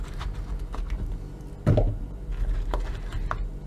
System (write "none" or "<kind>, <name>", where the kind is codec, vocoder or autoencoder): none